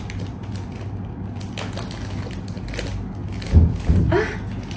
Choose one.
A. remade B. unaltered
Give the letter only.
B